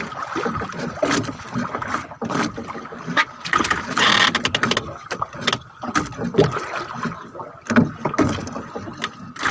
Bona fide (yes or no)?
yes